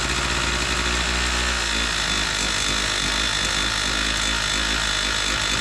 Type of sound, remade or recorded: recorded